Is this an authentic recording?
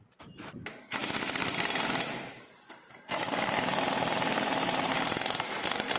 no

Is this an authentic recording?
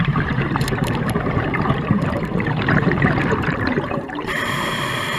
no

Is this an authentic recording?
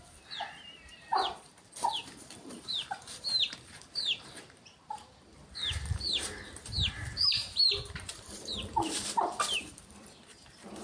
no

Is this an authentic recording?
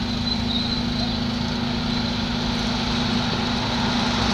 yes